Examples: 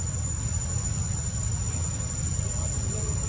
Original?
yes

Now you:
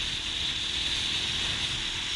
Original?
yes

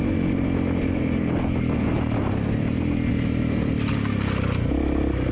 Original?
yes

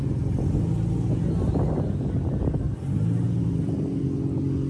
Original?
yes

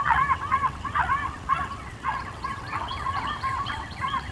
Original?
no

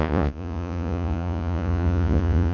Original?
no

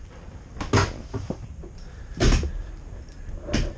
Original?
yes